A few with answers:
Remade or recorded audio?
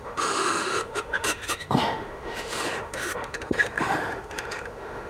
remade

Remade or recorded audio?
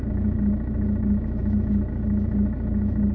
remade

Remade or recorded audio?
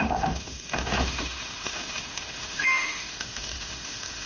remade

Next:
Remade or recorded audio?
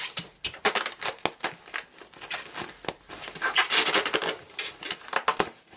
recorded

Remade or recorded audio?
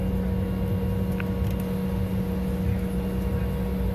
recorded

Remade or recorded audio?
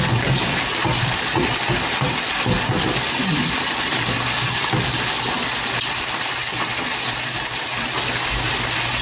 recorded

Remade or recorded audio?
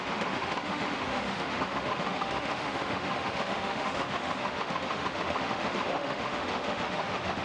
remade